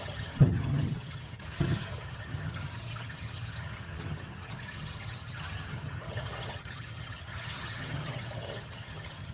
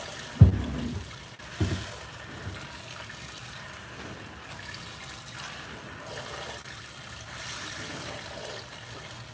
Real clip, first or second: second